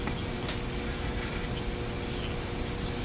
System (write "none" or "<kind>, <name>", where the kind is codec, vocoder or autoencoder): none